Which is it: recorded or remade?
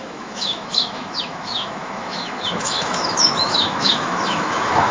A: remade